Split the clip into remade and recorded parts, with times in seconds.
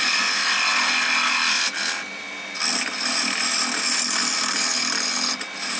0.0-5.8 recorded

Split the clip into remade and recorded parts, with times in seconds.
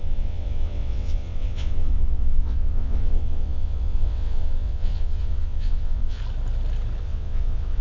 0.0-6.2 remade; 6.2-7.0 recorded; 7.0-7.8 remade